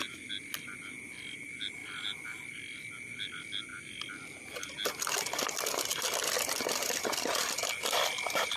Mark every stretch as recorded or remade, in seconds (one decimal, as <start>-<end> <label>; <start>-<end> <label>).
0.0-8.6 recorded